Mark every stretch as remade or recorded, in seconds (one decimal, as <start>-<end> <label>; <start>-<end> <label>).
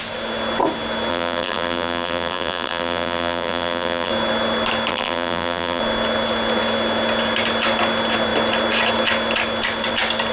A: 0.0-1.1 recorded; 1.1-4.1 remade; 4.1-4.9 recorded; 4.9-5.8 remade; 5.8-10.3 recorded